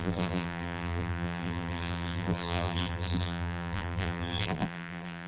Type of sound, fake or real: fake